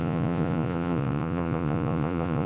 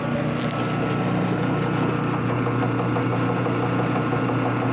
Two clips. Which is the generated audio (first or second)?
first